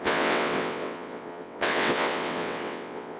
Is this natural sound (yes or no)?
no